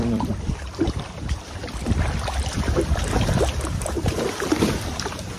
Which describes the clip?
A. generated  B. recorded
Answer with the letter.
A